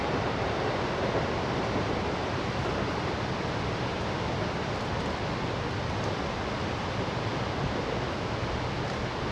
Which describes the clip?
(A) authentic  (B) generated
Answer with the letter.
A